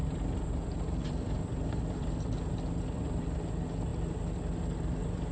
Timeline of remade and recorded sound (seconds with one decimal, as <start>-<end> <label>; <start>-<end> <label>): 0.0-3.2 remade; 3.2-5.3 recorded